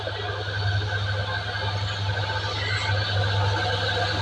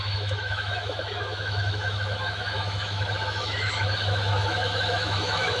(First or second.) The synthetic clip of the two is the second